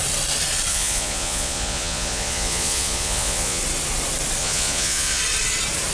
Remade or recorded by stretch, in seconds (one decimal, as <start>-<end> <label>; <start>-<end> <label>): 0.0-0.7 recorded; 0.7-3.6 remade; 3.6-4.4 recorded; 4.4-5.2 remade; 5.2-5.9 recorded